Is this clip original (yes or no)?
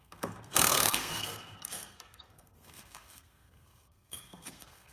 no